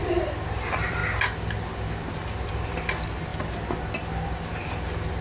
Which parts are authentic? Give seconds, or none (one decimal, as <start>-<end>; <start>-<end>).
1.0-2.1; 3.3-4.5